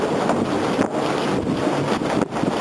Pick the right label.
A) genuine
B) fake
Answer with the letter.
A